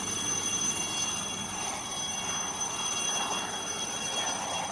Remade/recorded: recorded